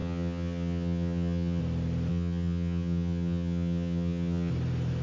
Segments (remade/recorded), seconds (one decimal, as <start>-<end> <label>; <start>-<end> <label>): 0.0-1.6 remade; 1.6-2.1 recorded; 2.1-4.5 remade; 4.5-5.0 recorded